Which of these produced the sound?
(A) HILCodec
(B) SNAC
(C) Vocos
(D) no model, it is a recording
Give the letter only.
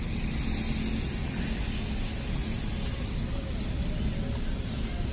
D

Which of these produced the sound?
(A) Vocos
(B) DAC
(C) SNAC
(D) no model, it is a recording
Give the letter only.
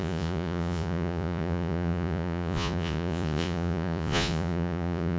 A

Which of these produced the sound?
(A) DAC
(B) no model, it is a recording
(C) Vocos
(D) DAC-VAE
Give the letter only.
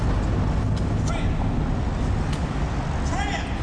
B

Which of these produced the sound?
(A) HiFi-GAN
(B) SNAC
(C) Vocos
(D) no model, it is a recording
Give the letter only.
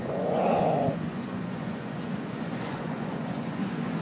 C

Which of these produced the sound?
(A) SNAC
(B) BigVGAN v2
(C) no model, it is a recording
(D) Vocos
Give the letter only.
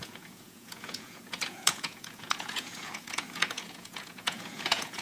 D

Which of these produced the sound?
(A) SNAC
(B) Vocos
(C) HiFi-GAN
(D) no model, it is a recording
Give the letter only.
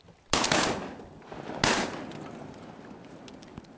D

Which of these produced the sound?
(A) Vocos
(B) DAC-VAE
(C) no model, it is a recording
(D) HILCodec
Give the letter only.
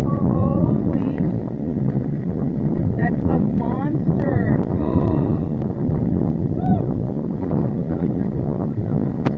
A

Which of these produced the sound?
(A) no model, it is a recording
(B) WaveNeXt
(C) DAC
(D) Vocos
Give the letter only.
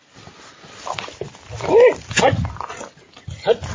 A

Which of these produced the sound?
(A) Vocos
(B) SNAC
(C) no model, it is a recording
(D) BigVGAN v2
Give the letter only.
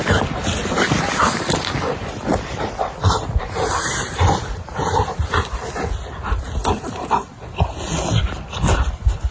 C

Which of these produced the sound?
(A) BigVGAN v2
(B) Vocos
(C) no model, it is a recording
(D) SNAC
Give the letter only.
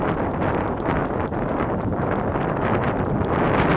C